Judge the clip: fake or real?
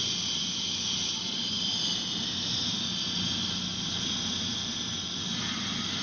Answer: real